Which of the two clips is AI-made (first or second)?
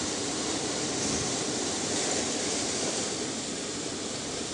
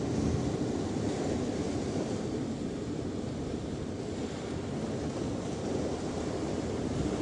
first